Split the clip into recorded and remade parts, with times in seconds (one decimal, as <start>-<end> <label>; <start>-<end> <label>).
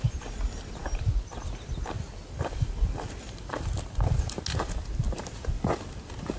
0.0-6.4 recorded